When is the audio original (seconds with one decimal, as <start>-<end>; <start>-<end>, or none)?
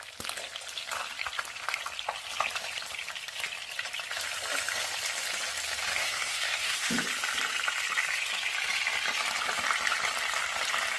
0.0-6.0; 6.9-11.0